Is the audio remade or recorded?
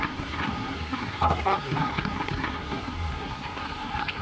remade